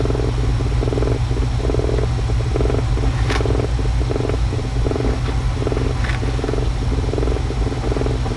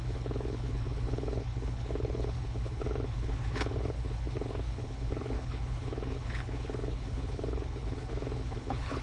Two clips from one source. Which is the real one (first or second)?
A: first